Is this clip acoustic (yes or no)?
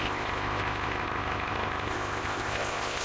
no